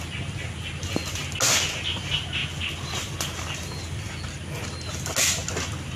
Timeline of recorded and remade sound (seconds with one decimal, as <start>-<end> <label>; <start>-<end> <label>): 0.0-6.0 recorded